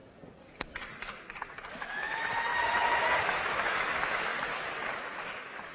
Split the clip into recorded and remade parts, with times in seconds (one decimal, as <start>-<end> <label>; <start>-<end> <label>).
0.0-1.7 recorded; 1.7-2.5 remade; 2.5-3.2 recorded; 3.2-4.3 remade; 4.3-5.0 recorded; 5.0-5.7 remade